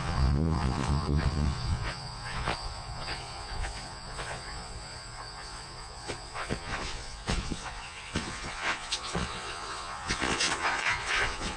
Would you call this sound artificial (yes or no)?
yes